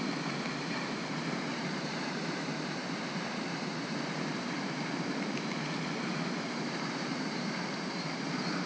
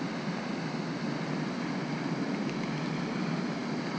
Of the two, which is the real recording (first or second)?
second